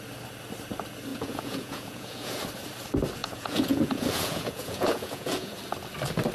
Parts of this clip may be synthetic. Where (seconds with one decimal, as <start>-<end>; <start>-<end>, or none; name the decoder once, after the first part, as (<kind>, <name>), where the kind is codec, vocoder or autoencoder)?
1.1-2.4 (vocoder, Vocos); 3.2-5.6